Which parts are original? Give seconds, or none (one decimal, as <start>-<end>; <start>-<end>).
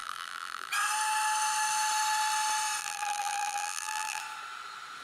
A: 0.7-2.8; 4.2-5.0